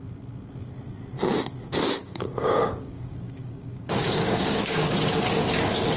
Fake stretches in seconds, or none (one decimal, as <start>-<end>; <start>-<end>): 2.0-4.9